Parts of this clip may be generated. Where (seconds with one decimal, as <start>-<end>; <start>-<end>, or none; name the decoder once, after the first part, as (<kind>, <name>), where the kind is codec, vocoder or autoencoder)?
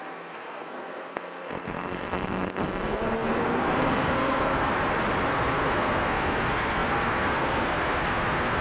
0.0-4.7 (codec, SNAC); 5.3-8.6